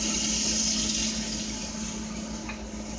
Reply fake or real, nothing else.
real